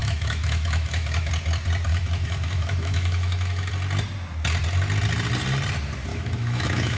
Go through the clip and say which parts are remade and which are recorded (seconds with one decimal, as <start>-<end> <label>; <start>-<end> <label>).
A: 0.0-1.3 remade; 1.3-1.9 recorded; 1.9-3.7 remade; 3.7-6.1 recorded; 6.1-7.0 remade

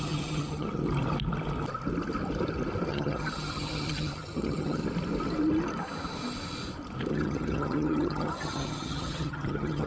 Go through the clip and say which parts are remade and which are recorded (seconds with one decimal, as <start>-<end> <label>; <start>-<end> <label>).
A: 0.0-0.8 remade; 0.8-2.9 recorded; 2.9-4.8 remade; 4.8-7.1 recorded; 7.1-9.9 remade

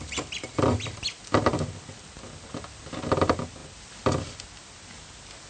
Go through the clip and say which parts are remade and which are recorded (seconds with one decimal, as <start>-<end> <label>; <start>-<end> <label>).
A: 0.0-5.5 recorded

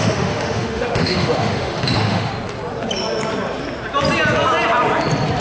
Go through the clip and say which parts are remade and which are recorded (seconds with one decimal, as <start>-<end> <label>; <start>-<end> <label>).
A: 0.0-2.3 remade; 2.3-5.4 recorded

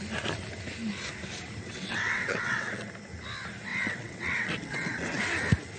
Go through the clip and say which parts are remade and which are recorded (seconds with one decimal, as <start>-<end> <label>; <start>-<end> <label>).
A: 0.0-1.6 recorded; 1.6-2.9 remade; 2.9-3.7 recorded; 3.7-5.2 remade; 5.2-5.8 recorded

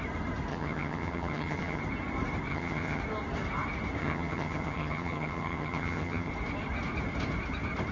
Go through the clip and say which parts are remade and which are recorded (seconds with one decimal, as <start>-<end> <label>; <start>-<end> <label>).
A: 0.0-0.5 recorded; 0.5-1.8 remade; 1.8-2.5 recorded; 2.5-3.0 remade; 3.0-4.0 recorded; 4.0-6.3 remade; 6.3-7.9 recorded

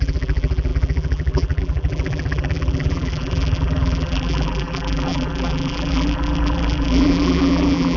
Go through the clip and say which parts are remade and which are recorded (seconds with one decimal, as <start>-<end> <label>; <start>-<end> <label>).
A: 0.0-8.0 remade